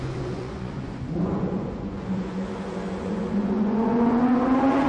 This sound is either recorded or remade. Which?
remade